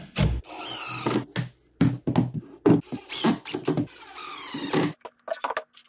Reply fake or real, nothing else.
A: real